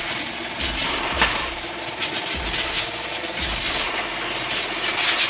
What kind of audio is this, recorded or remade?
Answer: recorded